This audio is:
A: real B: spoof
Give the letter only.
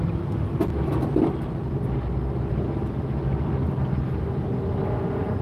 A